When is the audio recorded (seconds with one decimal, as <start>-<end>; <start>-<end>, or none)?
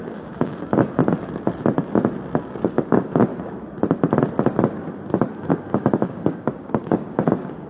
1.0-2.5; 3.3-5.5